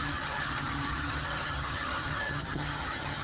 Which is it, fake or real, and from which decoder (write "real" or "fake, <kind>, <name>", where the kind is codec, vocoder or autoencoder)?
fake, vocoder, HiFi-GAN